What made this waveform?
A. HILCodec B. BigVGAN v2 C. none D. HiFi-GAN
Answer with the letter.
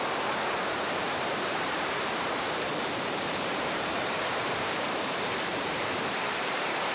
B